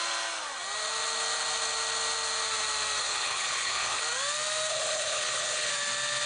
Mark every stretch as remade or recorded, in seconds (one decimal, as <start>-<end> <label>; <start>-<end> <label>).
0.0-3.0 recorded; 3.0-4.0 remade; 4.0-4.7 recorded; 4.7-5.7 remade; 5.7-6.3 recorded